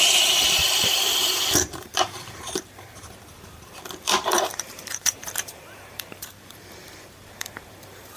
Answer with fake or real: fake